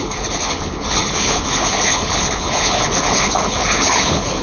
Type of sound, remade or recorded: remade